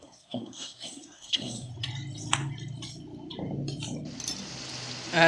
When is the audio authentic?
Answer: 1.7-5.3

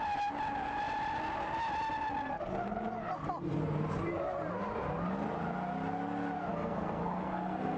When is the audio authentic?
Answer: 0.0-6.5

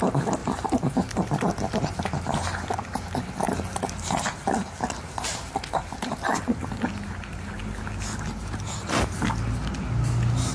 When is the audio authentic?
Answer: 0.0-10.5